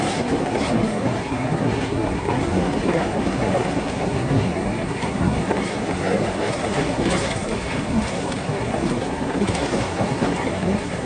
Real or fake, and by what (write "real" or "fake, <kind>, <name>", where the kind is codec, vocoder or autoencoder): fake, codec, SNAC